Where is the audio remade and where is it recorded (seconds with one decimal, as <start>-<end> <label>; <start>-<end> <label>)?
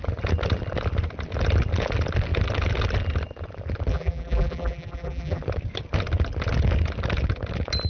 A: 0.0-3.9 recorded; 3.9-5.4 remade; 5.4-7.9 recorded